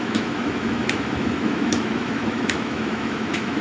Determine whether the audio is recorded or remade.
remade